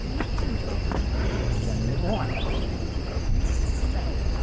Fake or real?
real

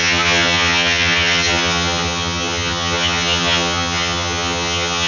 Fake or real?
fake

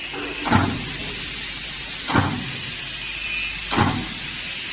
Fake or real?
real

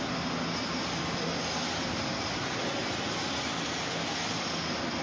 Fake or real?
real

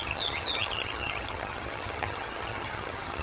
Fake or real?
fake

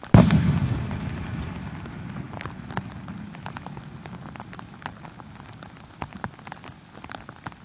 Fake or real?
real